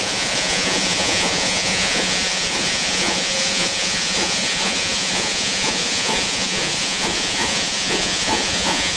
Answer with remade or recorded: remade